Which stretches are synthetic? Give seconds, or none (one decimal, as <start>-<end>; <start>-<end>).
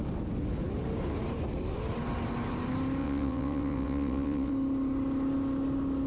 3.0-4.5